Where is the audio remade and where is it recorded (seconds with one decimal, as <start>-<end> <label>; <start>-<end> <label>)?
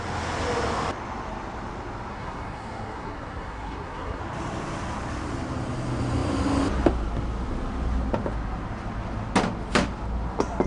0.0-2.1 recorded; 2.1-4.2 remade; 4.2-10.7 recorded